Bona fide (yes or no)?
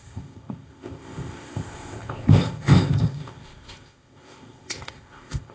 no